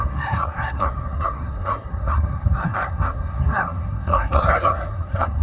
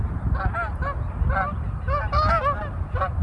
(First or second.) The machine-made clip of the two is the first